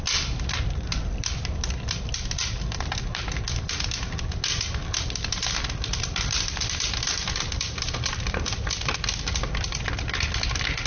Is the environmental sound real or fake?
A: real